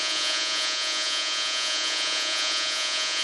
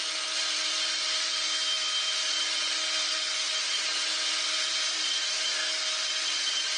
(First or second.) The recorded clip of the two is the second